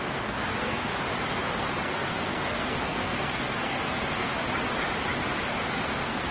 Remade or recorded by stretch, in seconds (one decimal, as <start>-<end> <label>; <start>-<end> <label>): 0.0-0.9 remade; 0.9-1.5 recorded; 1.5-4.3 remade; 4.3-5.8 recorded; 5.8-6.3 remade